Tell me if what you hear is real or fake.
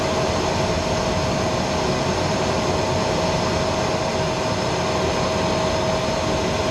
real